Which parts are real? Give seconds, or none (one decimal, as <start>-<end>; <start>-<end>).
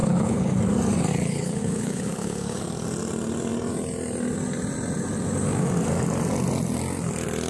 0.6-1.1; 2.6-7.5